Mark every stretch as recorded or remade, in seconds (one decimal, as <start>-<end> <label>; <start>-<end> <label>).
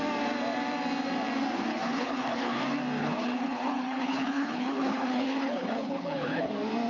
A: 0.0-1.7 recorded; 1.7-2.6 remade; 2.6-3.0 recorded; 3.0-6.5 remade; 6.5-6.9 recorded